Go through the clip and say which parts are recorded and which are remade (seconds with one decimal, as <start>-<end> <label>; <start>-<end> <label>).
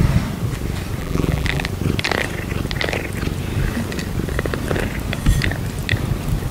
0.0-1.0 recorded; 1.0-1.7 remade; 1.7-6.5 recorded